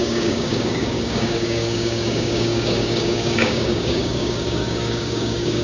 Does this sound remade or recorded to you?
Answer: remade